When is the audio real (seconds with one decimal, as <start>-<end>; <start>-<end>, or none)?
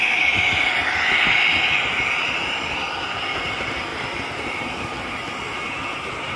0.0-6.4